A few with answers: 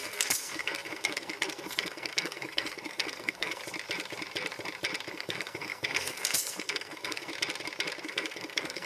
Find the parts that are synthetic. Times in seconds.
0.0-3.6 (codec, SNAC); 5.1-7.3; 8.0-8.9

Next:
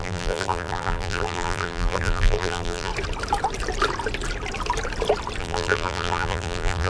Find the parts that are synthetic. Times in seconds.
0.0-2.9 (vocoder, BigVGAN v2); 5.4-6.9

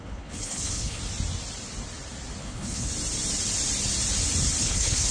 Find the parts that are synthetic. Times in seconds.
0.0-1.0 (codec, HILCodec); 2.4-2.9; 4.6-5.1

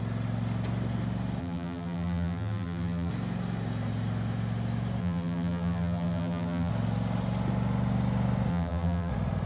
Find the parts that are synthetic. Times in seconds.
1.4-3.1 (vocoder, BigVGAN v2); 5.0-6.7; 8.5-9.1

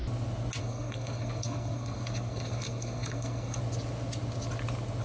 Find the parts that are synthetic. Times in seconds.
0.6-3.6 (codec, SNAC)

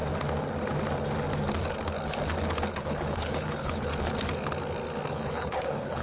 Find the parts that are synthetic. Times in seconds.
2.7-3.9 (codec, HILCodec); 5.1-6.0